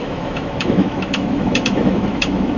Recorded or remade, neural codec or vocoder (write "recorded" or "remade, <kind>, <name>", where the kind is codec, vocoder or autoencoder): remade, autoencoder, DAC-VAE